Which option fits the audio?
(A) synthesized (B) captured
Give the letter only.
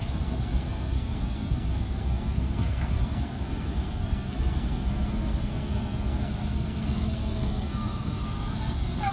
A